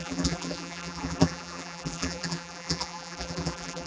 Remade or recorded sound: remade